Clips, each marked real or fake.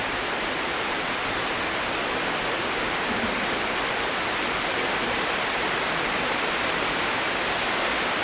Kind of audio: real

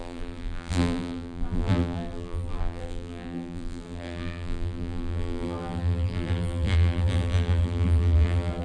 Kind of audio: fake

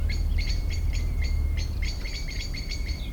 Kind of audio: fake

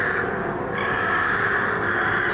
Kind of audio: fake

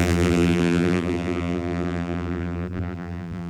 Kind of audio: fake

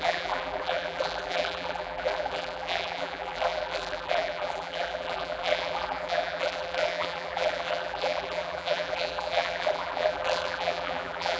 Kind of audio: fake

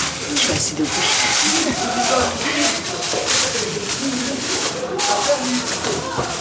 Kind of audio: fake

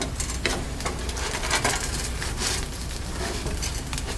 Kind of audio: fake